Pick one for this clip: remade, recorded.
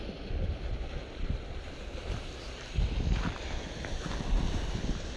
recorded